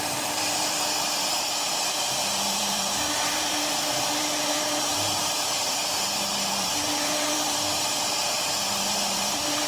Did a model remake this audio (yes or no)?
yes